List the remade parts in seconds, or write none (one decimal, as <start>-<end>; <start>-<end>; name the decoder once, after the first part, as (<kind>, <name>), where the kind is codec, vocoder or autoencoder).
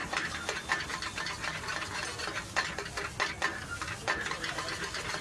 0.0-0.7 (vocoder, BigVGAN v2)